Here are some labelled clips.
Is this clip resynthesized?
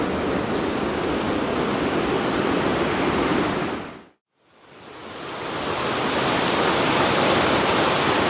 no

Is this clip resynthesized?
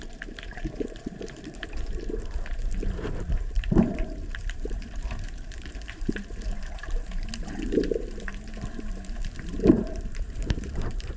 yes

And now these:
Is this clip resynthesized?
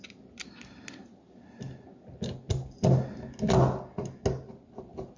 no